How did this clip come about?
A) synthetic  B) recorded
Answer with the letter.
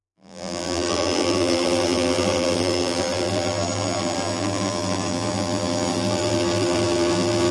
A